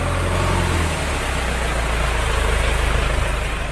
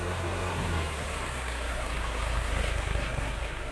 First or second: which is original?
first